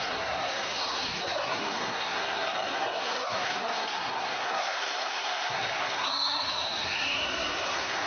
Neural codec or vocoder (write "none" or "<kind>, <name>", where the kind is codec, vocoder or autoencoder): codec, SNAC